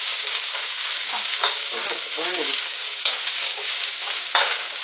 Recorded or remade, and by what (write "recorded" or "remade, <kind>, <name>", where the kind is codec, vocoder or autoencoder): remade, codec, DAC